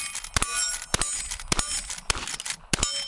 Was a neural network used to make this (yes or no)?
no